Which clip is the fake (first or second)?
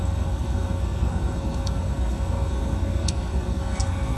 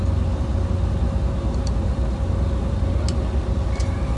first